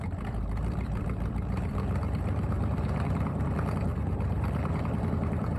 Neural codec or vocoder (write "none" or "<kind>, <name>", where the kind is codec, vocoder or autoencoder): vocoder, BigVGAN v2